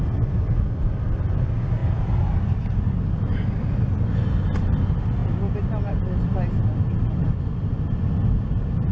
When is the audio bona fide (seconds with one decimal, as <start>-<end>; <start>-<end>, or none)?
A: 0.0-8.9